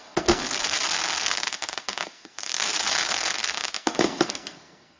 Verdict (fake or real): fake